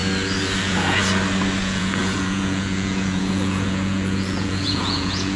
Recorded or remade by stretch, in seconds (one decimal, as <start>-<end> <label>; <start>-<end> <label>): 0.0-0.6 recorded; 0.6-1.0 remade; 1.0-1.6 recorded; 1.6-5.4 remade

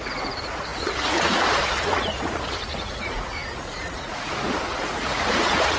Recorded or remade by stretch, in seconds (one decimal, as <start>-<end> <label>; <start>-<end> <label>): 0.0-5.8 remade

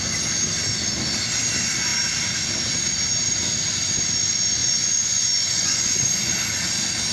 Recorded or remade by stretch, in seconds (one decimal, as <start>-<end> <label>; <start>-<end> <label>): 0.0-4.6 recorded; 4.6-6.3 remade; 6.3-7.1 recorded

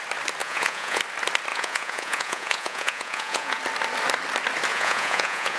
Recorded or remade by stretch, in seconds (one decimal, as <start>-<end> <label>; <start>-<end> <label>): 0.0-0.4 recorded; 0.4-1.0 remade; 1.0-1.5 recorded; 1.5-3.6 remade; 3.6-4.7 recorded; 4.7-5.6 remade